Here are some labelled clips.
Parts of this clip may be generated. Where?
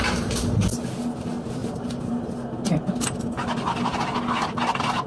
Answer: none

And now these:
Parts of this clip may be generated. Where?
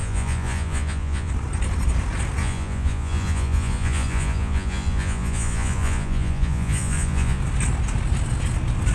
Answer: 0.0-1.3 (vocoder, Vocos); 2.4-7.4